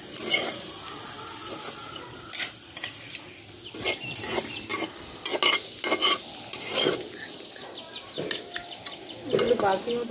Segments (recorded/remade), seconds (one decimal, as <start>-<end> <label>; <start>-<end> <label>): 0.0-10.1 recorded